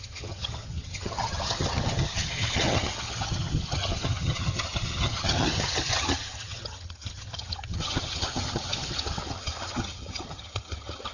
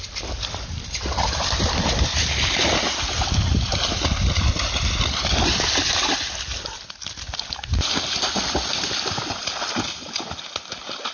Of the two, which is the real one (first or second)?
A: second